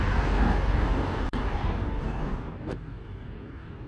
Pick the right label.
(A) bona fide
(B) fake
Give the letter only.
B